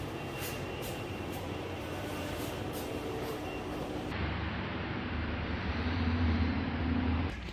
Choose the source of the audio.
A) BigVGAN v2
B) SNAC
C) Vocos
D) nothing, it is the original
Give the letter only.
A